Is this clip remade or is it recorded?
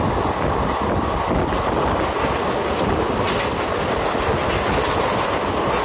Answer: recorded